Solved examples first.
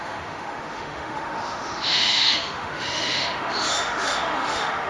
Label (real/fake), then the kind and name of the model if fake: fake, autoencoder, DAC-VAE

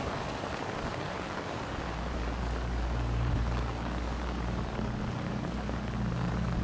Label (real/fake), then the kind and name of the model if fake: fake, codec, DAC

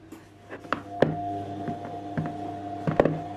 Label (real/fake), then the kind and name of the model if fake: real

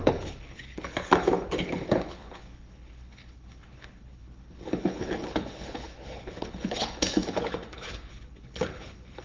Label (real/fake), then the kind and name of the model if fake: fake, codec, HILCodec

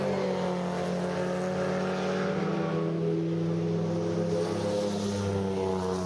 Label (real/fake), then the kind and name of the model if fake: real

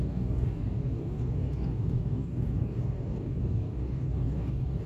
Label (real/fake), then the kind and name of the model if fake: fake, codec, DAC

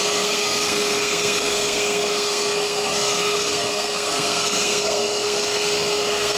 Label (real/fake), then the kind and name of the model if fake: fake, codec, SNAC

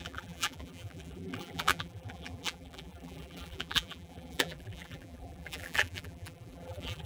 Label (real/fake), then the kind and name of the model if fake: fake, vocoder, BigVGAN v2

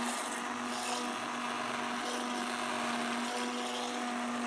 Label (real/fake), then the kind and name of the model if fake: real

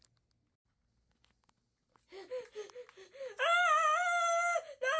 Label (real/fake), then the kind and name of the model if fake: real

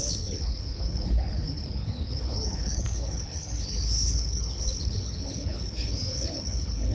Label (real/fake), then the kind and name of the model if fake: fake, codec, HILCodec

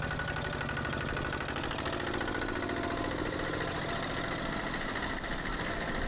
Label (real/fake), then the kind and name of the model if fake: real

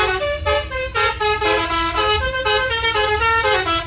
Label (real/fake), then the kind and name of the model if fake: real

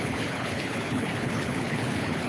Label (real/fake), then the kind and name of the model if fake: fake, codec, HILCodec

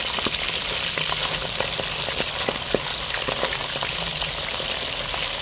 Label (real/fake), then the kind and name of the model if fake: real